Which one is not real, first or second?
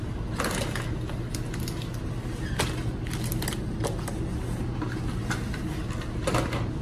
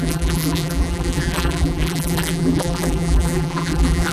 second